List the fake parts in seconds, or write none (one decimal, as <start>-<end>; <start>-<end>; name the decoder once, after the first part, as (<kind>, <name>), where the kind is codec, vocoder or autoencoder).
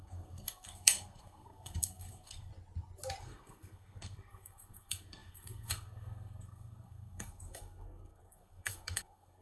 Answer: 0.0-2.5 (codec, SNAC); 3.2-9.4